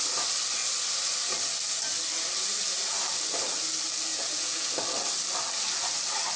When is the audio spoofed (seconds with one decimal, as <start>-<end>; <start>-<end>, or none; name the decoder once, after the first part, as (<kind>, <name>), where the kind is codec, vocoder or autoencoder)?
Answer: 4.1-4.7 (vocoder, Vocos)